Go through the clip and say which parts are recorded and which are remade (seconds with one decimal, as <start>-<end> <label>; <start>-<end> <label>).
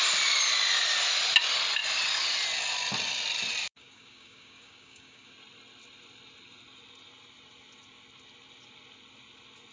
0.0-3.6 recorded; 3.6-5.3 remade; 5.3-9.7 recorded